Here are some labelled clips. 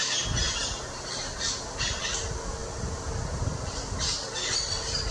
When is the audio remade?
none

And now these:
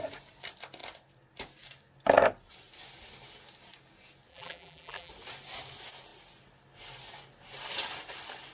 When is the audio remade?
4.3-5.1 (vocoder, BigVGAN v2)

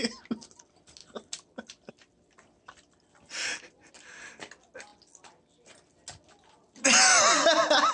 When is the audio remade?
none

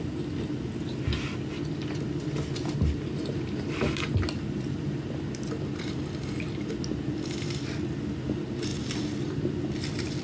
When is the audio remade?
8.7-10.2 (vocoder, BigVGAN v2)

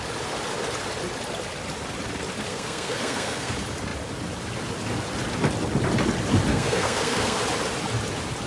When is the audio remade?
2.5-3.5 (codec, SNAC); 6.5-7.4

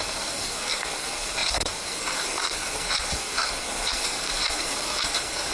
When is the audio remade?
0.0-5.5 (codec, SNAC)